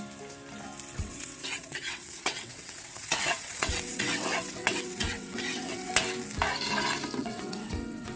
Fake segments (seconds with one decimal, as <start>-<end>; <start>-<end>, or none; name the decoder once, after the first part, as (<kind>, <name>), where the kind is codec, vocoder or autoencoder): 1.0-5.9 (vocoder, WaveNeXt); 7.2-8.2